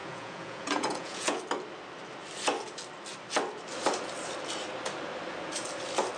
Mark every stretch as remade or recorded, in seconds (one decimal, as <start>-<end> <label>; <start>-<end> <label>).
0.0-1.4 remade; 1.4-6.2 recorded